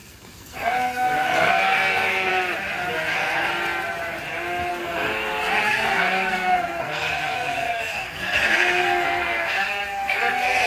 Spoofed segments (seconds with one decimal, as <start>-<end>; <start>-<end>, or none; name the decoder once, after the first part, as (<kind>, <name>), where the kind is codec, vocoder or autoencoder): 0.0-2.3 (codec, SNAC); 3.1-3.5; 4.7-10.7